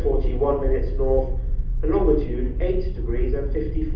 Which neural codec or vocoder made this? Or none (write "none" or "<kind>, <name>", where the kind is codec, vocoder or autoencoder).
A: none